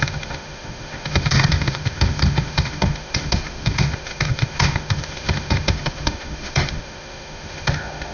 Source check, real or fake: fake